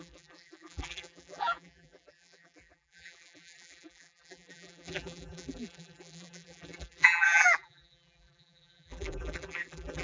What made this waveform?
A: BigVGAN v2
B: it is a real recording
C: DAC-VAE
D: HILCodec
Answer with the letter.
A